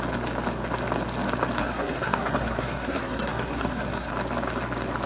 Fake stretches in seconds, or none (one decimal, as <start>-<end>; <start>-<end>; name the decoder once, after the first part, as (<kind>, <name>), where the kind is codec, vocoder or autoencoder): 1.6-4.1 (codec, SNAC)